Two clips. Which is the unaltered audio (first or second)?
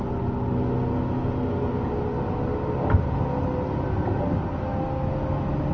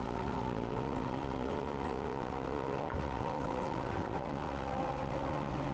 first